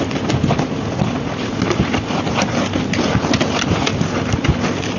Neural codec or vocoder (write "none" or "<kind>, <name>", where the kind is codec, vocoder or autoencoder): none